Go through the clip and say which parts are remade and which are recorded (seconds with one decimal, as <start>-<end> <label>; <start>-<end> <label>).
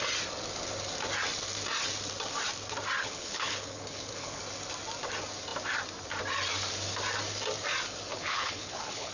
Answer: 0.0-3.0 recorded; 3.0-4.4 remade; 4.4-8.1 recorded; 8.1-9.1 remade